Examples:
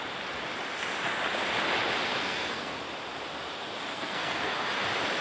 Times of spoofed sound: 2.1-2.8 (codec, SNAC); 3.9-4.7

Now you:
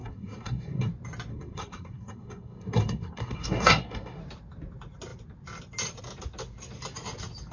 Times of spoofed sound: 0.0-0.9 (codec, SNAC); 1.3-4.2

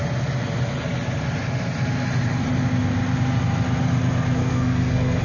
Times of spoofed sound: 4.4-5.2 (codec, SNAC)

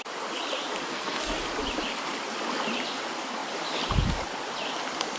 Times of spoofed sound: 0.9-1.4 (codec, SNAC)

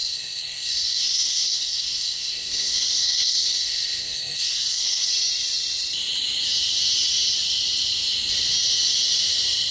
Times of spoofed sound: 0.0-5.1 (codec, SNAC)

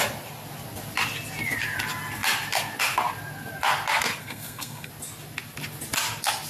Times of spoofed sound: 4.2-4.9 (codec, SNAC)

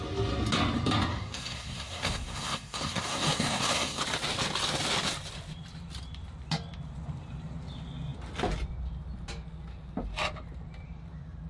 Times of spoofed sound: 1.1-4.0 (codec, SNAC)